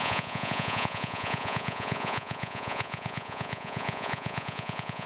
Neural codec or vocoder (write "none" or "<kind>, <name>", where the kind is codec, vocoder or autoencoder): vocoder, Vocos